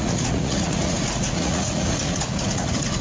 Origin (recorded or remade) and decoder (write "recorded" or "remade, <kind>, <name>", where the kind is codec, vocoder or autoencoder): remade, vocoder, Vocos